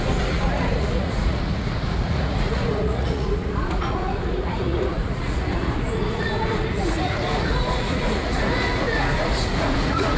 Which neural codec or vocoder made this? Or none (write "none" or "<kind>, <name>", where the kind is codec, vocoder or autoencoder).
vocoder, Vocos